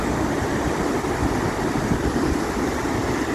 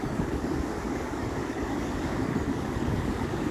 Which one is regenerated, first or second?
second